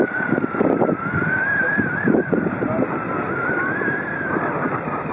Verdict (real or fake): fake